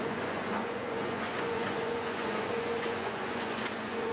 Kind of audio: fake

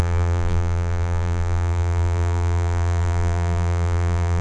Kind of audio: fake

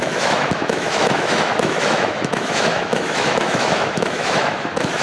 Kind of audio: fake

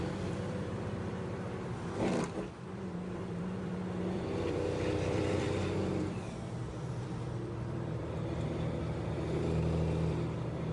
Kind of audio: fake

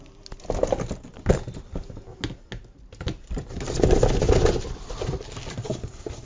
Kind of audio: real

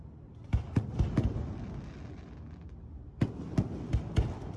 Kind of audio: real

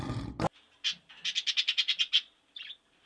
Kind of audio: real